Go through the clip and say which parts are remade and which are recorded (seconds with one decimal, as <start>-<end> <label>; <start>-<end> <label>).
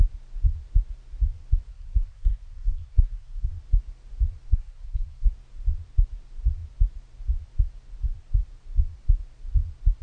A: 0.0-1.7 recorded; 1.7-3.5 remade; 3.5-4.5 recorded; 4.5-5.3 remade; 5.3-10.0 recorded